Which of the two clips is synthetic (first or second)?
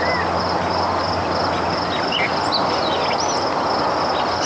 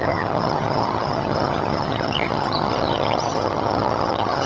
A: second